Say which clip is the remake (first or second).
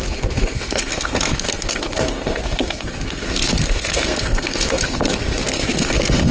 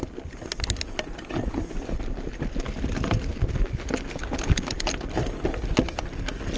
first